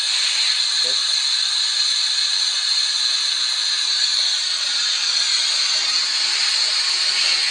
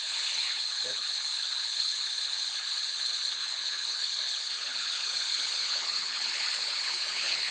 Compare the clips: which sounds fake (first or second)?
second